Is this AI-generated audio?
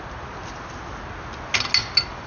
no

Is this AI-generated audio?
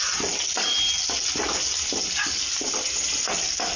no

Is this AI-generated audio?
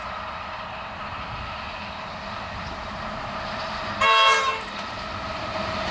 no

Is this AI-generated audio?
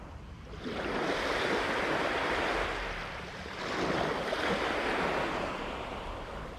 no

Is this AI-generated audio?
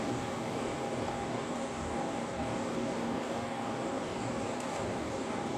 yes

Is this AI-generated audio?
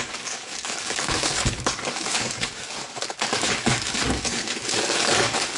yes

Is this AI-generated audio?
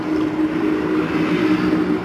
no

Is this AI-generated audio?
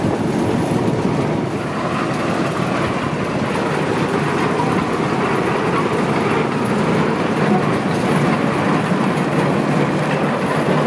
no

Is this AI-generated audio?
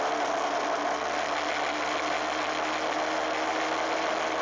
no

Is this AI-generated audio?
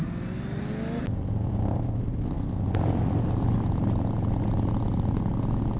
no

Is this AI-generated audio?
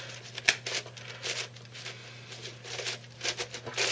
no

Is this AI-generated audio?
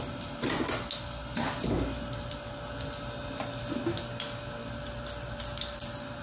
no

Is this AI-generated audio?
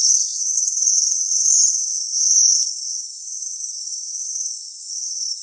yes